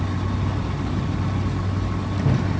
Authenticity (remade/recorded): recorded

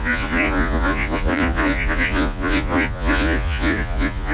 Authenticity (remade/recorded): remade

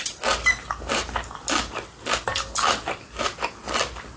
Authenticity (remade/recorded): recorded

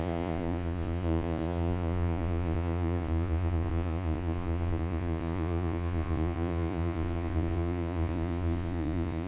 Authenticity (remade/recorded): remade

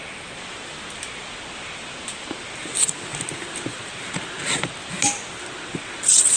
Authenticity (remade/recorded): recorded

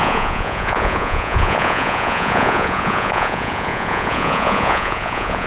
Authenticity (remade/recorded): remade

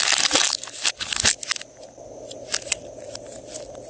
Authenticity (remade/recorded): recorded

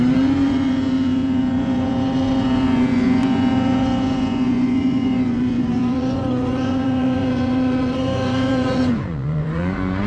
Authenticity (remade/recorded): remade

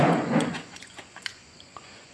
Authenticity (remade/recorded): remade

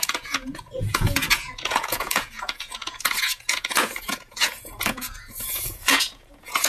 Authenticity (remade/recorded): remade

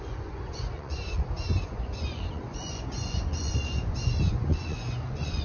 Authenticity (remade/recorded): remade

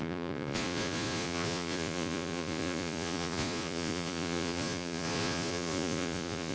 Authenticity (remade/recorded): remade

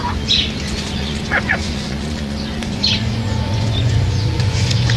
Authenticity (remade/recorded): remade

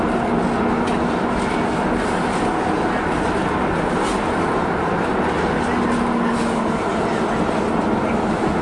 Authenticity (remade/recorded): recorded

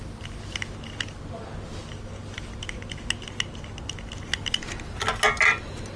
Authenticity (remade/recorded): recorded